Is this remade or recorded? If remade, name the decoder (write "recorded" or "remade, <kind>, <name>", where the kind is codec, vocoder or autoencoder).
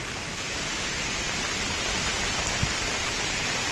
recorded